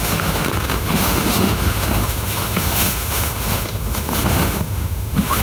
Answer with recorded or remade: remade